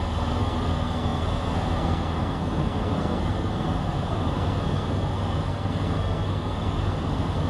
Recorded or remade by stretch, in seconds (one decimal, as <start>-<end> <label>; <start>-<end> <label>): 0.0-7.5 remade

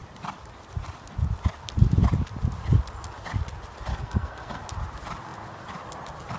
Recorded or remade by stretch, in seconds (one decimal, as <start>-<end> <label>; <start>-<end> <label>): 0.0-3.9 recorded; 3.9-4.6 remade; 4.6-6.4 recorded

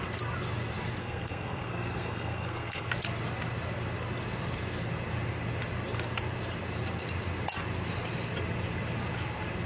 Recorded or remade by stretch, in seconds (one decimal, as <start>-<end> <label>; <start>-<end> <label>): 0.0-1.0 recorded; 1.0-2.9 remade; 2.9-9.7 recorded

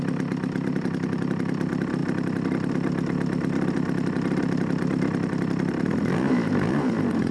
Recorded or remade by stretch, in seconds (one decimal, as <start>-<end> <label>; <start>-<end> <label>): 0.0-7.3 recorded

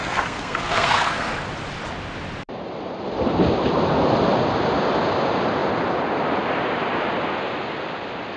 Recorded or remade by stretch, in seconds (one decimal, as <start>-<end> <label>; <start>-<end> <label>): 0.0-1.3 remade; 1.3-8.4 recorded

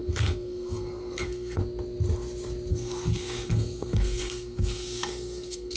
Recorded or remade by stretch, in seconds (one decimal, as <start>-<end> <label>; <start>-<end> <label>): 0.0-1.6 remade; 1.6-2.7 recorded; 2.7-5.8 remade